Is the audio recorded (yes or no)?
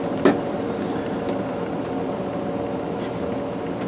yes